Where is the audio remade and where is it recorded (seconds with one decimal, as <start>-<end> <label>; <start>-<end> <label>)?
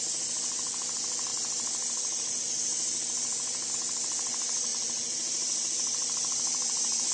0.0-4.7 recorded; 4.7-7.1 remade